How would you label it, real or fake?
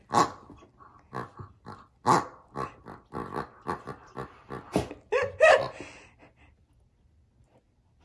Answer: real